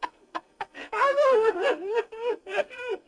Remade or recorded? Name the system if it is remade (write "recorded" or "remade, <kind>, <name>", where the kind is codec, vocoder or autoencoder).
remade, codec, SNAC